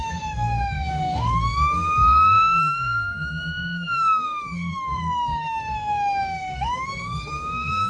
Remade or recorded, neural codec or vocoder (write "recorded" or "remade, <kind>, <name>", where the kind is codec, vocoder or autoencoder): remade, autoencoder, DAC-VAE